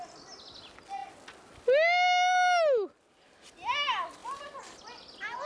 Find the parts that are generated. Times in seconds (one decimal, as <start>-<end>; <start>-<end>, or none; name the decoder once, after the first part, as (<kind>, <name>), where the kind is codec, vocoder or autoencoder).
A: none